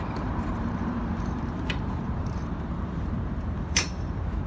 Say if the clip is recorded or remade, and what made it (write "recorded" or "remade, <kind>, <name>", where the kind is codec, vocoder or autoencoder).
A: remade, vocoder, BigVGAN v2